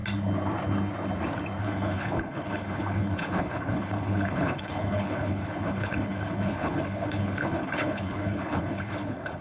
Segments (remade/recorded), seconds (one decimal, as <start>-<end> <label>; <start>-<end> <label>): 0.0-1.6 recorded; 1.6-9.4 remade